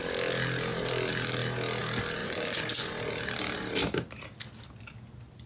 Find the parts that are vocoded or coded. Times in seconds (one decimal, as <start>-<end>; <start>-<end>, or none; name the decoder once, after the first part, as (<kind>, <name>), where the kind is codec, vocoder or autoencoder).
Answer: 2.2-2.9 (vocoder, Vocos)

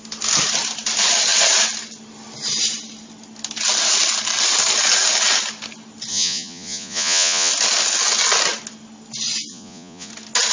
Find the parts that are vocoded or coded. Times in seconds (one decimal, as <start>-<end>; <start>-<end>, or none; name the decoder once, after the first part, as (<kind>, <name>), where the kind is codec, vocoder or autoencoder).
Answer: 6.1-7.5 (vocoder, Vocos); 9.5-10.1

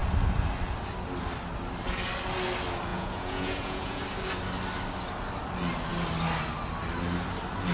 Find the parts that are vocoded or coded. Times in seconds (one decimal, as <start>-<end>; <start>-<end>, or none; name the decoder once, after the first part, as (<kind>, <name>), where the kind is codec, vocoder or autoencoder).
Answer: 2.9-4.0 (vocoder, Vocos)

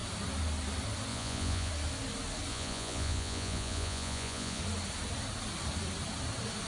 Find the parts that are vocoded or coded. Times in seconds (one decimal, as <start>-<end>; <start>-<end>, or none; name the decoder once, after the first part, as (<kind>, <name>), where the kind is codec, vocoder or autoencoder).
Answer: 1.1-1.7 (vocoder, Vocos); 2.5-4.6

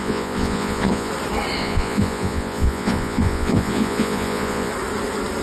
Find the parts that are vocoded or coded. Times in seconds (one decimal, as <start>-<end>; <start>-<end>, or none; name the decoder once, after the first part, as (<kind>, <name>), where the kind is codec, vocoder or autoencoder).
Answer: 0.0-1.1 (vocoder, Vocos); 1.6-4.7

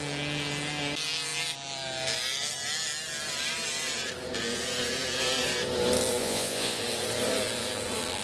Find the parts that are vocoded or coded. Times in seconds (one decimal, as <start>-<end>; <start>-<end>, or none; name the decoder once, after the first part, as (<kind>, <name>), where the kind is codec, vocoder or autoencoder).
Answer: 6.2-6.8 (vocoder, Vocos)

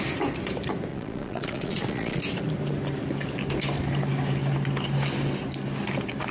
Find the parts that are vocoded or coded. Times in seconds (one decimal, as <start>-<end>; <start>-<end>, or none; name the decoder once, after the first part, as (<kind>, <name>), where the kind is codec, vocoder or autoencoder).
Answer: 0.9-2.2 (vocoder, Vocos)

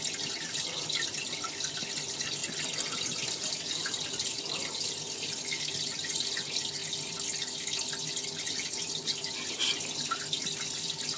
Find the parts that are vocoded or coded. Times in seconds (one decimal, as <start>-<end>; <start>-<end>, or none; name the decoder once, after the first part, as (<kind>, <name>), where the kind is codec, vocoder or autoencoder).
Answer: none